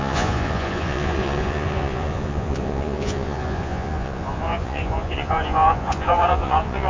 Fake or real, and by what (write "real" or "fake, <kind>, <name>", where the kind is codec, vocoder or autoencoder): fake, vocoder, Vocos